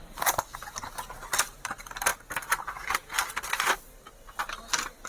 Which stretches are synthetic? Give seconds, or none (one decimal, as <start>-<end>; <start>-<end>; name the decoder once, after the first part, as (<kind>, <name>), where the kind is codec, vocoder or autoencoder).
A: none